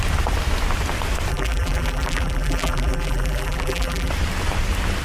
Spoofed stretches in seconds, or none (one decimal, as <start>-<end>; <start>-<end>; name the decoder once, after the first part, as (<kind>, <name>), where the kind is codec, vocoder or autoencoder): 1.3-4.1 (vocoder, BigVGAN v2)